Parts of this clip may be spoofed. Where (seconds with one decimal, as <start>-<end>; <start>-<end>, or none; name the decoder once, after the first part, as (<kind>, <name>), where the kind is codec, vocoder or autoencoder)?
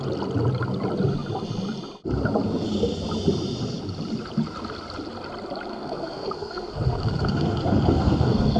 5.7-8.6 (codec, SNAC)